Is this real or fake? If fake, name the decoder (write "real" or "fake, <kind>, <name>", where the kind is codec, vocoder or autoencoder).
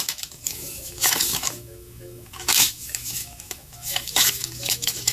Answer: fake, autoencoder, DAC-VAE